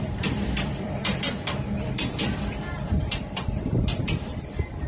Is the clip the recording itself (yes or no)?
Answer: no